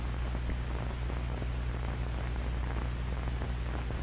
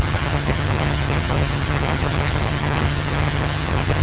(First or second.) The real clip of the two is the first